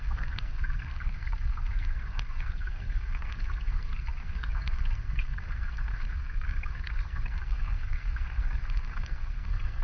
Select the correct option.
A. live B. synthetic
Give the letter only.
B